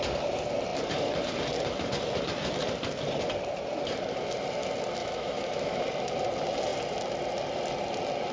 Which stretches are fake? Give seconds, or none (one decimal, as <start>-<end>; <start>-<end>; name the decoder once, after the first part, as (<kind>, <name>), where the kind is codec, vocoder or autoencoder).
5.0-5.8 (autoencoder, DAC-VAE)